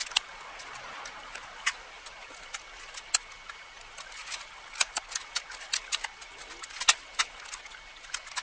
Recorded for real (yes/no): yes